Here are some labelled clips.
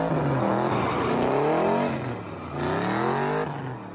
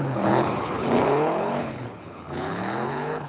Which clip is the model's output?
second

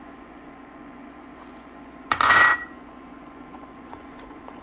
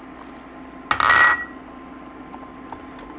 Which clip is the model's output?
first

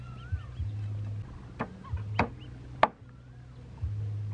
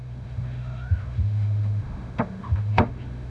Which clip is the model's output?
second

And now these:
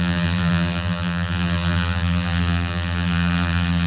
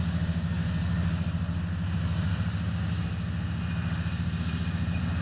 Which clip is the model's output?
first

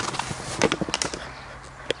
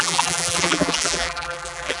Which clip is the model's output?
second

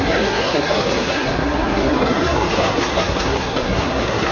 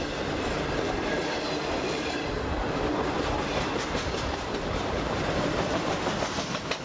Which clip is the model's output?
first